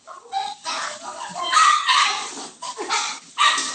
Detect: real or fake fake